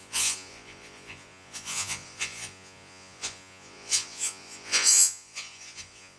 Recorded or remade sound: remade